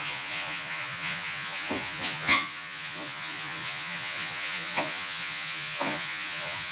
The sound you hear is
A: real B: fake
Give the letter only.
B